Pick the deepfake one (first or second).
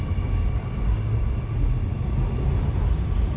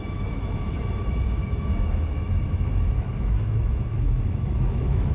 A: second